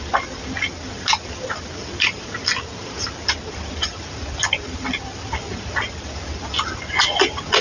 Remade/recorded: recorded